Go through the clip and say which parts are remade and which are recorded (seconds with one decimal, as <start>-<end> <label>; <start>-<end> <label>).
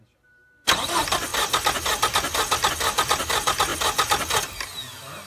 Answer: 0.0-1.3 remade; 1.3-2.7 recorded; 2.7-3.7 remade; 3.7-5.3 recorded